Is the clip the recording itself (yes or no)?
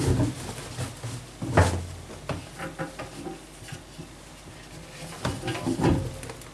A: yes